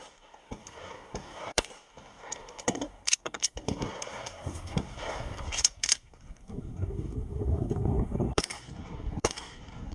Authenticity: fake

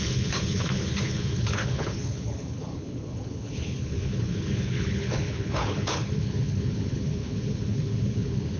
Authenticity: fake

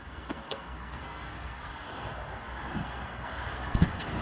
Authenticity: fake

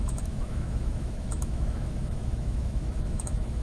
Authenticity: fake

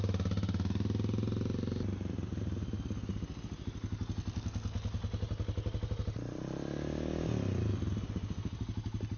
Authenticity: real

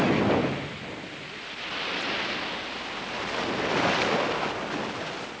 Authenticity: real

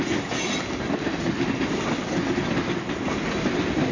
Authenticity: real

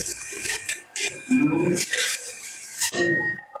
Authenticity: fake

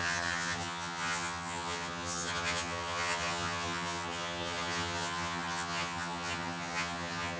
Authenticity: fake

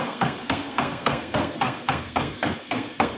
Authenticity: fake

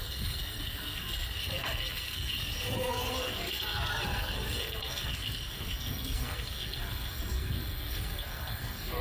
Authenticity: fake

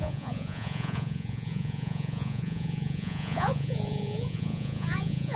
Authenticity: fake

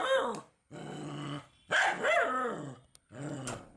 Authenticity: real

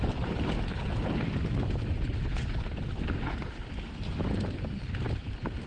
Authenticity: real